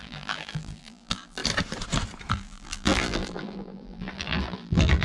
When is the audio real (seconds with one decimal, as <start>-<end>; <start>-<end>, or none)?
1.4-2.3